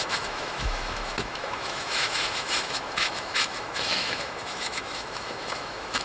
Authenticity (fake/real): fake